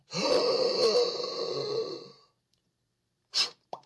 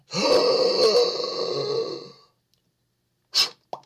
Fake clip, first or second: first